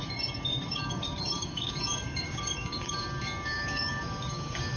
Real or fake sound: fake